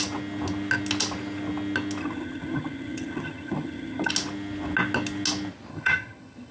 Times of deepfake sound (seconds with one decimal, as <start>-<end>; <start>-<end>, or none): 2.0-4.1; 5.7-6.5